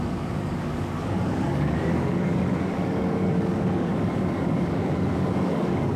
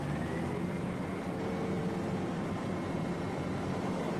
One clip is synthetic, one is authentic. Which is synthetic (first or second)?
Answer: first